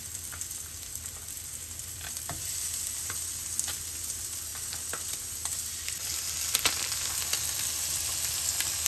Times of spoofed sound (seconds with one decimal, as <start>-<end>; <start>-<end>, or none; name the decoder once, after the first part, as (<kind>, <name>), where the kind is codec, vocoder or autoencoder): none